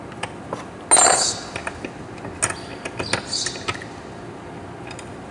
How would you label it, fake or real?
real